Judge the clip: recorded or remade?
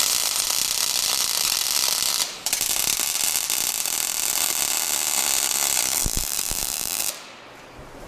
remade